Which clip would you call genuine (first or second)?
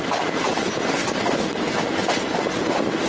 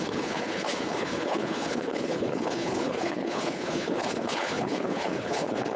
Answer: first